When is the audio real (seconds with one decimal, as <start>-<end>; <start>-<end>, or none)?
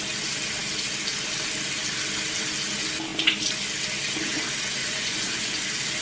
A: 0.0-4.8; 5.6-6.0